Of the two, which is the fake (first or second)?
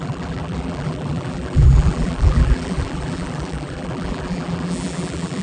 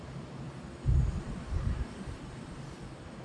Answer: first